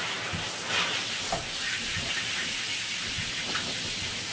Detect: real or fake real